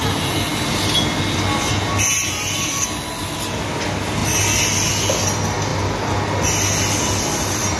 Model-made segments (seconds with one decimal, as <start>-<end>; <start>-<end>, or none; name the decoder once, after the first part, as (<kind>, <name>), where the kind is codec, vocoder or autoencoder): none